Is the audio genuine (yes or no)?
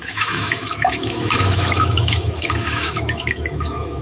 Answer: no